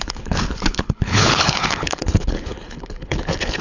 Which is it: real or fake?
fake